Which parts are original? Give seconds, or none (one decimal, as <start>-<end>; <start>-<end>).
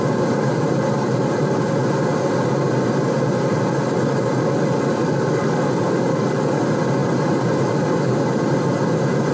0.0-5.0; 5.6-6.1; 6.6-9.3